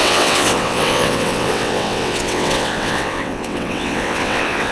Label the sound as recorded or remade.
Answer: remade